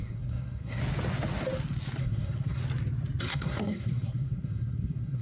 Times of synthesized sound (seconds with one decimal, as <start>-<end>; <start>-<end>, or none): 0.0-0.8; 2.0-2.6; 3.2-5.2